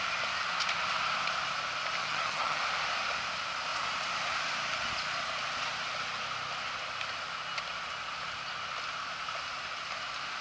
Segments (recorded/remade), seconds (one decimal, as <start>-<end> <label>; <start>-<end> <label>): 0.0-2.0 recorded; 2.0-2.6 remade; 2.6-10.4 recorded